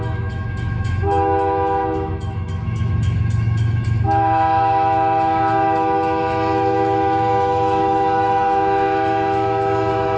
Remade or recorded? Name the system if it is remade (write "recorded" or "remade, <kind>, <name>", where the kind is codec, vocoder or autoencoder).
remade, autoencoder, DAC-VAE